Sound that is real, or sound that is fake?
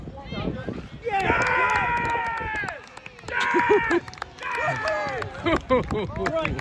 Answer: real